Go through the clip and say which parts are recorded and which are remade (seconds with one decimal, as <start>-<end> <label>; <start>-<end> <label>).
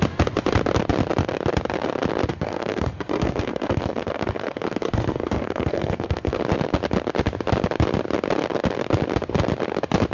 0.0-2.3 recorded; 2.3-6.4 remade; 6.4-10.1 recorded